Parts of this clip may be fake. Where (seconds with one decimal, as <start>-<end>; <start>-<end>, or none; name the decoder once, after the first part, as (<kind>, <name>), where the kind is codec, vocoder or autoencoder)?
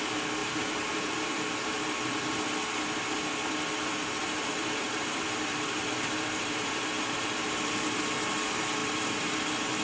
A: 0.4-2.2 (vocoder, BigVGAN v2); 4.2-8.0; 8.8-9.3